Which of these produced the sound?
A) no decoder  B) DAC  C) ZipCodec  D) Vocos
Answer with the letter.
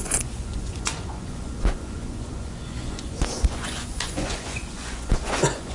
D